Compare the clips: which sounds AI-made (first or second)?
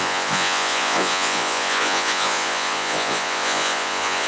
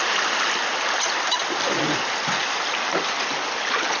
first